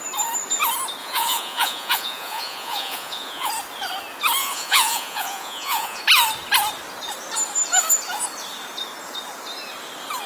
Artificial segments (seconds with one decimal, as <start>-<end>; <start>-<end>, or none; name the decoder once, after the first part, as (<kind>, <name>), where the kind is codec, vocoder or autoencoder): 1.0-3.5 (vocoder, Vocos); 4.4-6.0